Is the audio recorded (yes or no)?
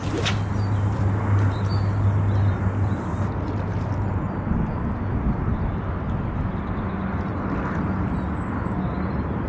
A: yes